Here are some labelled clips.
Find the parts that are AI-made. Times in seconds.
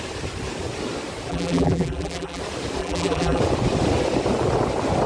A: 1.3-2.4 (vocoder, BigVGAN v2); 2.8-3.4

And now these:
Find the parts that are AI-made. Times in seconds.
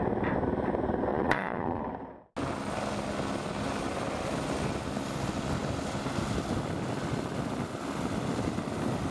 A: 1.1-1.8 (vocoder, Vocos)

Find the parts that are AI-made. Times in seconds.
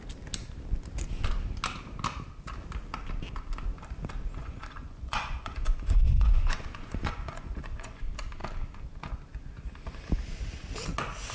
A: 4.4-8.0 (vocoder, Vocos)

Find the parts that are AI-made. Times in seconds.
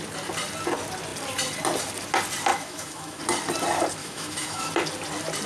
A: 2.5-3.2 (autoencoder, DAC-VAE); 4.0-4.7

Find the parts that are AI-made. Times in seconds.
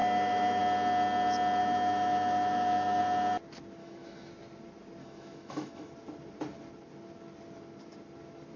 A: 0.0-0.6 (autoencoder, DAC-VAE); 1.6-3.0; 3.8-4.3; 5.0-5.9